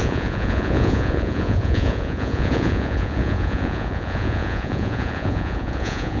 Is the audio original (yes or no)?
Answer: no